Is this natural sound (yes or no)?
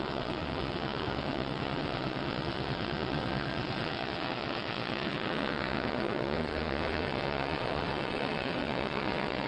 no